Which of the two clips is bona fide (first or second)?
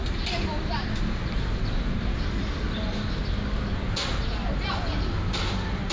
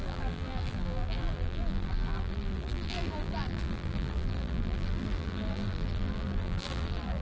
first